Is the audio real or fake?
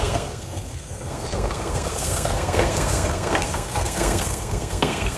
fake